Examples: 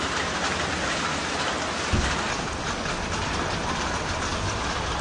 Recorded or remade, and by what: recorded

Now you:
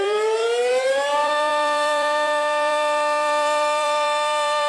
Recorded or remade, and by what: remade, vocoder, BigVGAN v2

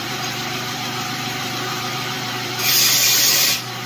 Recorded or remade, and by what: remade, vocoder, BigVGAN v2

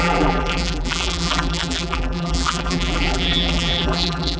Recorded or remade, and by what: remade, vocoder, BigVGAN v2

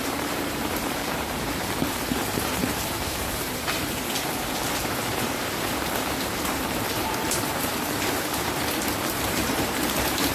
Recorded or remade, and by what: remade, vocoder, BigVGAN v2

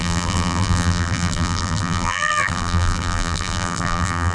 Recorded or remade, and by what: remade, vocoder, BigVGAN v2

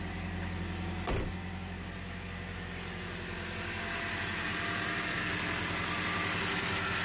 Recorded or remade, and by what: recorded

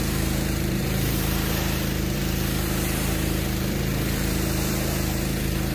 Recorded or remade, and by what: remade, vocoder, BigVGAN v2